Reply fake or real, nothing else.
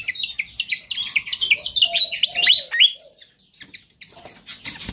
real